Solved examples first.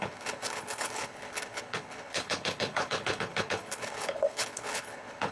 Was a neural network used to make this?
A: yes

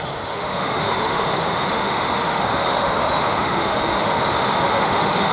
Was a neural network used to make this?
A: yes